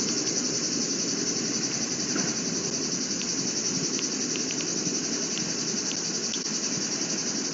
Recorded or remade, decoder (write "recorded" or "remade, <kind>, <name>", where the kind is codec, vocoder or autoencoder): recorded